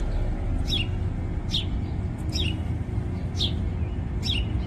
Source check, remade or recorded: recorded